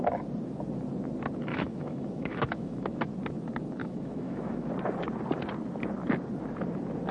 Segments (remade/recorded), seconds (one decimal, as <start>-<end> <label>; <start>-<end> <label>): 0.0-1.5 recorded; 1.5-3.0 remade; 3.0-3.8 recorded; 3.8-4.7 remade; 4.7-7.1 recorded